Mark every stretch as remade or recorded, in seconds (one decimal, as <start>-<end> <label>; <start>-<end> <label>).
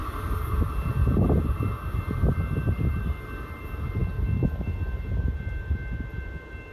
0.0-6.7 recorded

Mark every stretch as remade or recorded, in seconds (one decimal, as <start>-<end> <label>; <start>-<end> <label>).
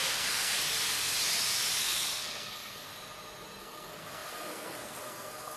0.0-1.1 remade; 1.1-1.8 recorded; 1.8-2.9 remade; 2.9-3.6 recorded; 3.6-5.6 remade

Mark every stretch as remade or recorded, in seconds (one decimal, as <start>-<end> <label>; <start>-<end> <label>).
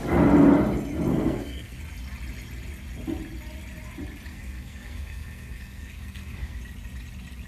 0.0-1.1 recorded; 1.1-1.8 remade; 1.8-4.3 recorded; 4.3-6.6 remade; 6.6-7.5 recorded